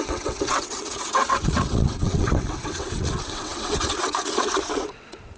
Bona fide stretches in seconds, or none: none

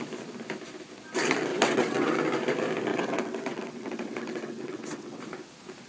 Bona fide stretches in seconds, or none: 0.0-1.5; 2.2-2.9; 5.2-5.9

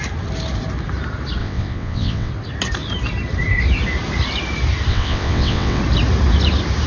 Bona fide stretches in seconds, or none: 0.0-1.4; 2.3-4.9; 5.8-6.9

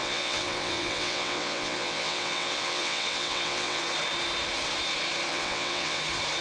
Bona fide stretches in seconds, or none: 3.8-5.3; 6.0-6.4

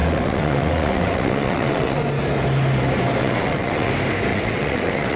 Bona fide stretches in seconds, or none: 2.0-3.2; 3.9-4.3